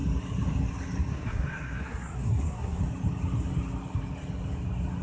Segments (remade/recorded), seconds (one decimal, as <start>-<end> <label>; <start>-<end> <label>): 0.0-1.1 recorded; 1.1-2.8 remade; 2.8-5.0 recorded